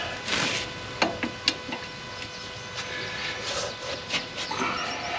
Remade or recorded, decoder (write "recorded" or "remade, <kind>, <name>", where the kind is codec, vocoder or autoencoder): recorded